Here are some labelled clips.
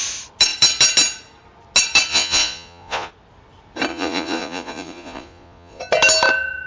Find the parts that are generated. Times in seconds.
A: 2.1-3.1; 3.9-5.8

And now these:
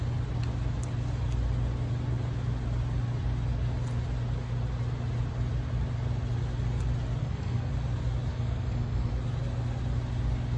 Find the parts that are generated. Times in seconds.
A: 7.2-7.7; 8.3-9.1

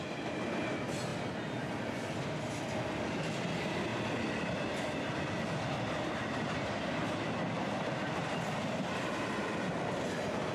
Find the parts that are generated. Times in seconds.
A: none